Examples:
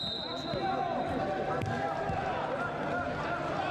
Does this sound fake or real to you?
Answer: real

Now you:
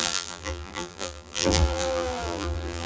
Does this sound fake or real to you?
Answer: fake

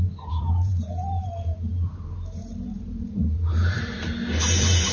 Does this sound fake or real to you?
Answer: fake